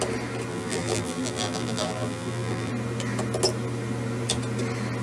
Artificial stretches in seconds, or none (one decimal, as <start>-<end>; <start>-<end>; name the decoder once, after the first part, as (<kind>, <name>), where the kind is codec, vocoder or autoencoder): 0.5-2.7 (vocoder, BigVGAN v2)